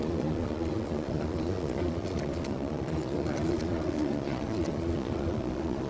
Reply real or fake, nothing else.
fake